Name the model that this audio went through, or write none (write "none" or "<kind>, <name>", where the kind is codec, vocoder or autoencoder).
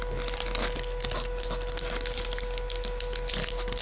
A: none